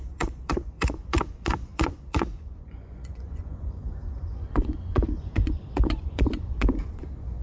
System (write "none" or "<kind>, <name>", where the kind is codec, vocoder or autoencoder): vocoder, Vocos